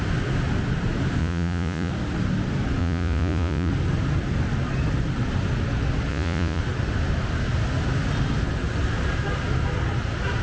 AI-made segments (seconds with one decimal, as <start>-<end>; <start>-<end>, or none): 1.2-1.9; 2.8-3.7; 6.1-6.6